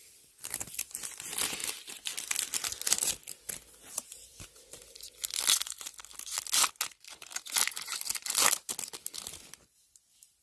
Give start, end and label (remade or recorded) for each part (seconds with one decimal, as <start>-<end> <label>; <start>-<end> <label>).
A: 0.0-10.4 recorded